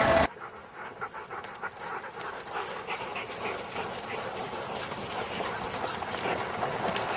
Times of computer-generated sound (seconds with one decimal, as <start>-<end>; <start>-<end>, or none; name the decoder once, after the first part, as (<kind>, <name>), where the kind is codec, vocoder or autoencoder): none